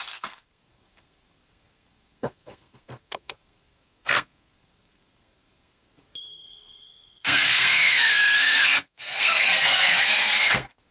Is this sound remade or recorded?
remade